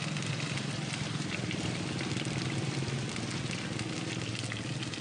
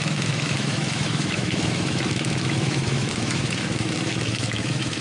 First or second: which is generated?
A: second